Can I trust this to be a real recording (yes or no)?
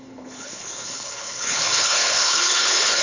no